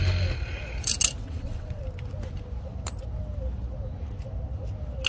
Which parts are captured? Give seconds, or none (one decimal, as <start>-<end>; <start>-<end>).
0.0-1.2; 1.8-5.1